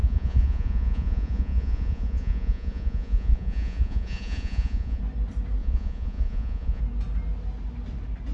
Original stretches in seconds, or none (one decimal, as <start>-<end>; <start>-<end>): 5.0-5.6; 6.8-8.3